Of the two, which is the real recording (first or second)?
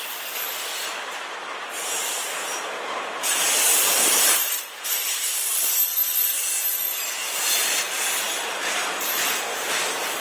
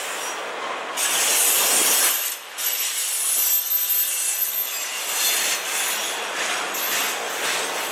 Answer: second